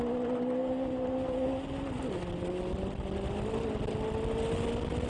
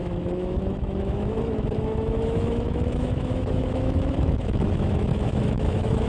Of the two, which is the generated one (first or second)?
second